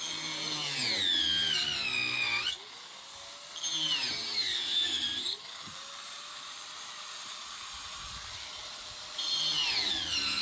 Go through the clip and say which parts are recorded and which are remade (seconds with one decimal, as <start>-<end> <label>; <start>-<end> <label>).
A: 0.0-4.5 recorded; 4.5-9.4 remade; 9.4-10.4 recorded